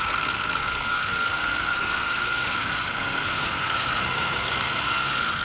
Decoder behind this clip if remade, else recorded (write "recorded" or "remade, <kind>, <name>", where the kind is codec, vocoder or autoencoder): remade, codec, SNAC